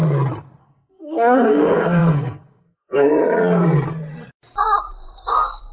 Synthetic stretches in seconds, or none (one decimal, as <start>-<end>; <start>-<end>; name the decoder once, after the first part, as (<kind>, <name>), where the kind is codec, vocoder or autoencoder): 0.6-3.1 (codec, SNAC); 5.3-5.7